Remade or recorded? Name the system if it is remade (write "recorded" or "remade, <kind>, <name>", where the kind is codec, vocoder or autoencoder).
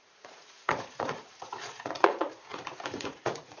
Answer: remade, vocoder, Vocos